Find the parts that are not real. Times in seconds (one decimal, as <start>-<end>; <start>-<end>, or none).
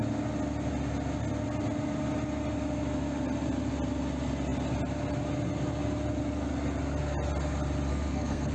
7.9-8.5